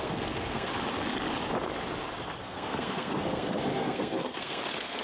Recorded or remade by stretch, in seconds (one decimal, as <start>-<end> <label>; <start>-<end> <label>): 0.0-0.7 remade; 0.7-2.4 recorded; 2.4-5.0 remade